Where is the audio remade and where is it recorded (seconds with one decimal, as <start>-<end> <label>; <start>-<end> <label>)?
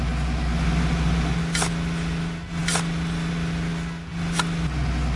0.0-5.2 recorded